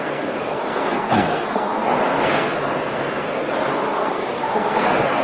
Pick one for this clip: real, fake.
fake